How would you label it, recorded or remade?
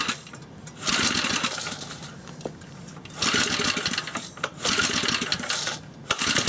recorded